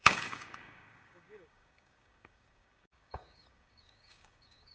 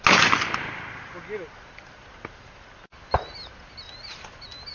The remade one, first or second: first